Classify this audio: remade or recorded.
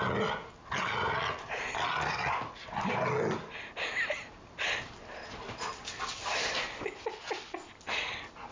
recorded